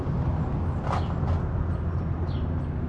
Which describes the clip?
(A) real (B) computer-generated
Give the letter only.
A